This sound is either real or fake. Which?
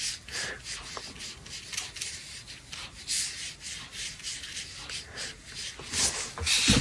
real